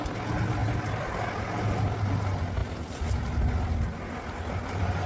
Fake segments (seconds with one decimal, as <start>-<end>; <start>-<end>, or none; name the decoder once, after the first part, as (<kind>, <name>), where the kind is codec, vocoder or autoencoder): none